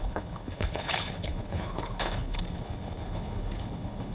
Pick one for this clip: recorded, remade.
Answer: remade